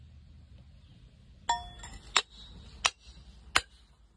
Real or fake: real